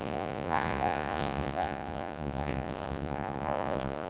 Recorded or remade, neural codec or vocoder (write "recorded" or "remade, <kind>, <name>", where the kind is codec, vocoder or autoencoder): remade, vocoder, Vocos